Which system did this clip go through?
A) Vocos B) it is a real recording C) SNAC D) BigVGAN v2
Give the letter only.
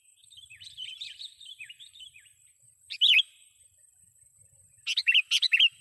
D